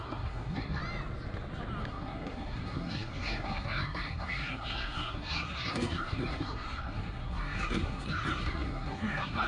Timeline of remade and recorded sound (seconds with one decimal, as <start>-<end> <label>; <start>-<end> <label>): 0.0-0.8 remade; 0.8-1.8 recorded; 1.8-9.5 remade